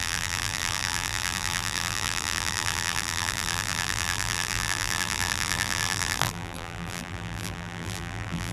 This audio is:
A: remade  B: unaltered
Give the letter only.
A